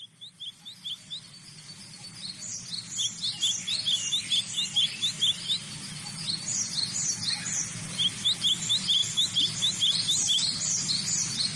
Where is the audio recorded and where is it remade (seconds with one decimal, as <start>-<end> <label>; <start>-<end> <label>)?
0.0-11.6 recorded